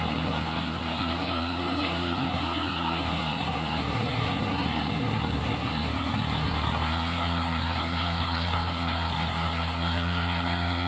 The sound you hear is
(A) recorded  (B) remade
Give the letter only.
B